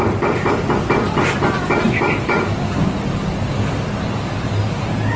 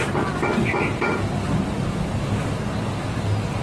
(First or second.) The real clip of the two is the second